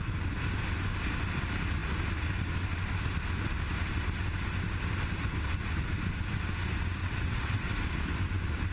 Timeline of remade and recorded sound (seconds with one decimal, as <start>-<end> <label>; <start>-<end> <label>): 0.0-7.0 recorded; 7.0-7.7 remade; 7.7-8.7 recorded